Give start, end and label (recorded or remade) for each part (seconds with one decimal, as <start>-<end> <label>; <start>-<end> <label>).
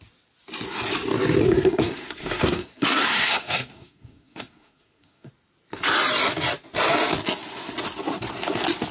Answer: 0.0-1.4 recorded; 1.4-5.3 remade; 5.3-8.9 recorded